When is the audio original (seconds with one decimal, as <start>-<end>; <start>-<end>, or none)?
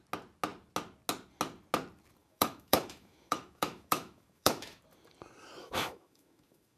0.0-2.2; 4.8-5.6